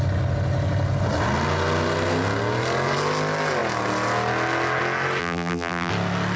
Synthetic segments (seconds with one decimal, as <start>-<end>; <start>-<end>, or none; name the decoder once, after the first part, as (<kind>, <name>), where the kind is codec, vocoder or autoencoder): 5.2-5.9 (vocoder, BigVGAN v2)